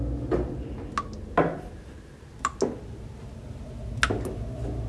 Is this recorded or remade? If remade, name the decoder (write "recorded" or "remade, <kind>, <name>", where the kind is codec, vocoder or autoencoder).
recorded